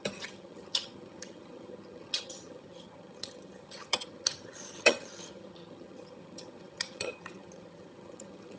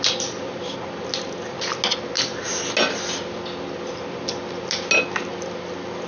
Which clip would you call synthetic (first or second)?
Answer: first